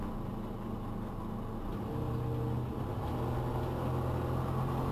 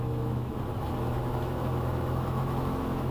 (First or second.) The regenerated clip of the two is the second